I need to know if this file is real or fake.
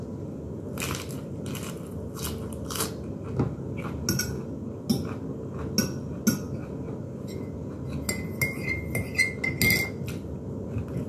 real